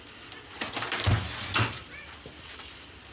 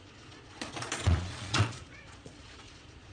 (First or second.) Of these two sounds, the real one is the first